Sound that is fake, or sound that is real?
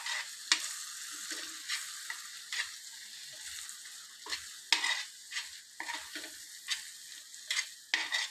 real